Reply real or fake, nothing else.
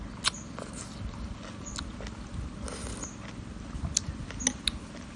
real